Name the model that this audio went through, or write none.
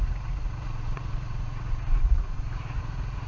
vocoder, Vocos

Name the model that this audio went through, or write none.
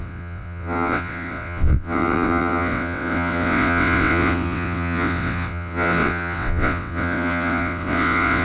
vocoder, WaveNeXt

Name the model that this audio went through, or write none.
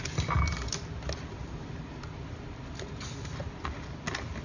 none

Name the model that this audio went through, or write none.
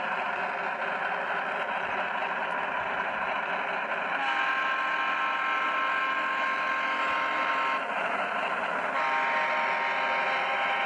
none